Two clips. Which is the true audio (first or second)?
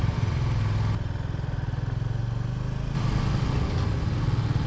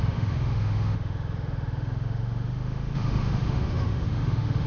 first